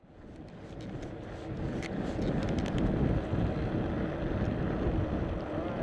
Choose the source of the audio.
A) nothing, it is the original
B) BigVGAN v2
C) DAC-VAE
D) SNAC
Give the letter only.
A